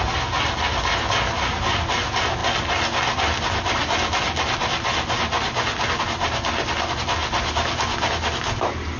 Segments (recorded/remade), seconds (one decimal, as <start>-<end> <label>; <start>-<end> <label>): 0.0-9.0 recorded